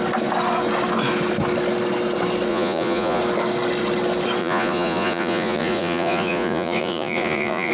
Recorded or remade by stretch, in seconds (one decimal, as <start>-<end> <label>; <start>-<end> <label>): 0.0-2.5 recorded; 2.5-3.2 remade; 3.2-4.4 recorded; 4.4-7.7 remade